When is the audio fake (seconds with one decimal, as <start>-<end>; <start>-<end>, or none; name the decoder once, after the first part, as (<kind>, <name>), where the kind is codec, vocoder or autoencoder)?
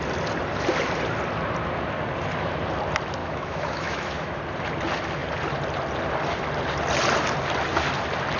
3.2-4.4 (autoencoder, DAC-VAE)